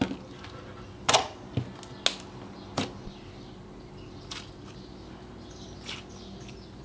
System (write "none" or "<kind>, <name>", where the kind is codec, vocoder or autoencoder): none